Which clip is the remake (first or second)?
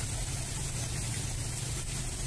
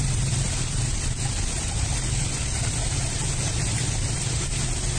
second